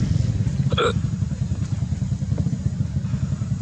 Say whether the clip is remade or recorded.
recorded